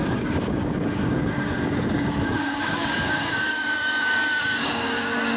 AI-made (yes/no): yes